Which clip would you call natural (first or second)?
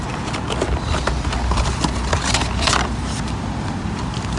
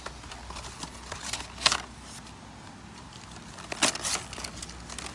second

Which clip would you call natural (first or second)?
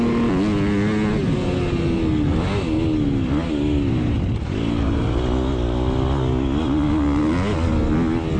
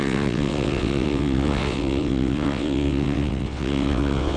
first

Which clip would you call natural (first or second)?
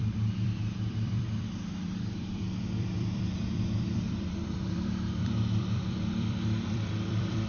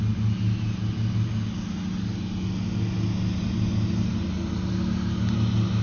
second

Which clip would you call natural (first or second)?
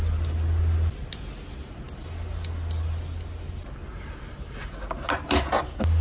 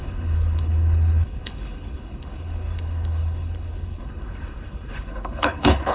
first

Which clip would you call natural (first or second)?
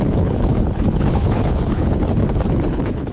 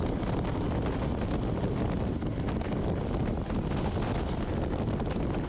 second